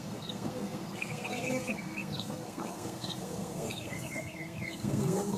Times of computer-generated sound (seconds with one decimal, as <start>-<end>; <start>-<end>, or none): 0.0-5.4